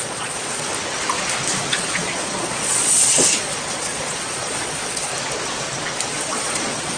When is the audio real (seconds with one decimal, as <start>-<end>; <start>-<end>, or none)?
0.7-1.7; 5.1-6.1